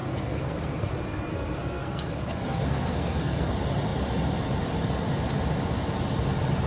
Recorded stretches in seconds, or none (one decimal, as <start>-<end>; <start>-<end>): 0.9-1.3; 3.5-6.7